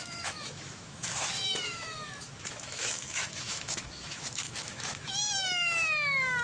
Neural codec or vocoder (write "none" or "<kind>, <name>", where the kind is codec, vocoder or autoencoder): autoencoder, DAC-VAE